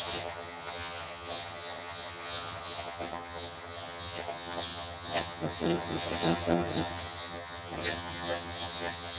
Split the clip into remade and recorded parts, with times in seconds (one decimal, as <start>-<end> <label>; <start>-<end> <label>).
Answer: 0.0-9.2 remade